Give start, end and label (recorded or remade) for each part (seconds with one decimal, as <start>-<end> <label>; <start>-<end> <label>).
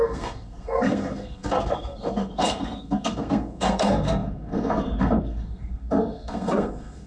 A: 0.0-7.1 remade